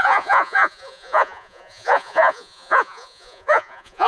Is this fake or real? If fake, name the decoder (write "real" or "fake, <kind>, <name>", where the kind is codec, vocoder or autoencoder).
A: fake, vocoder, Vocos